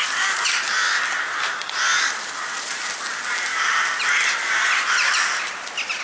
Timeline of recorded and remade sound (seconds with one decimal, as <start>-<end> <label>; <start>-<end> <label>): 0.0-6.0 recorded